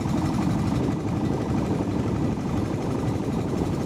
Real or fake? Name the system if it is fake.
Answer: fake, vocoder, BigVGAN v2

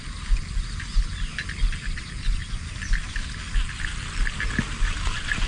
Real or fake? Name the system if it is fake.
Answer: real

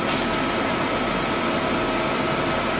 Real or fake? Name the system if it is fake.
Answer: real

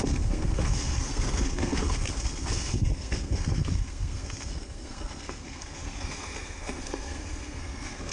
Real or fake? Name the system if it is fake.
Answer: fake, codec, SNAC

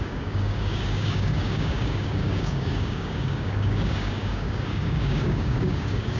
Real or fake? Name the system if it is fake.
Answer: fake, codec, DAC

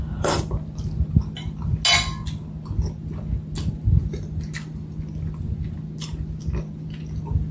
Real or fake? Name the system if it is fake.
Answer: real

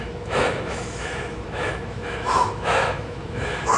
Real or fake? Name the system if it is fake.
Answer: fake, autoencoder, DAC-VAE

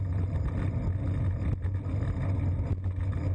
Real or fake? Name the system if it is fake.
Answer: real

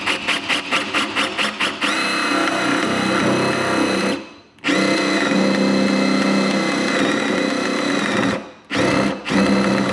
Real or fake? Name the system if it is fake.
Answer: real